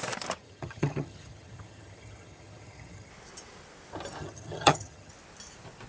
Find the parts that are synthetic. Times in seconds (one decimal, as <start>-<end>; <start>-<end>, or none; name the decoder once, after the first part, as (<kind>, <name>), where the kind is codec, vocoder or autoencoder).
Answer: 0.4-3.1 (vocoder, HiFi-GAN); 4.2-5.1